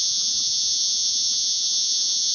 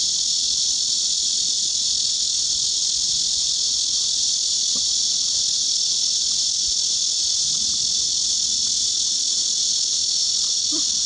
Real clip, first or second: second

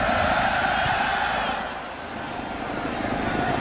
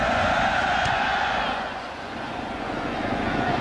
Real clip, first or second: first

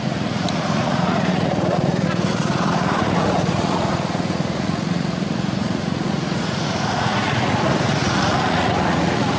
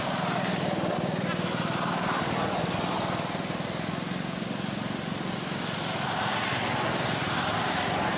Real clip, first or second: second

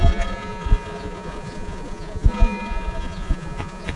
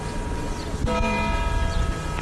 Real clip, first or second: second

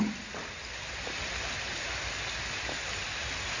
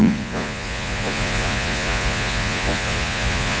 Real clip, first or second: first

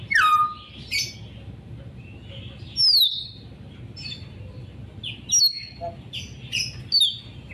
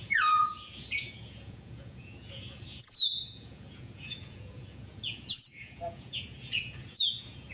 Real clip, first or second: first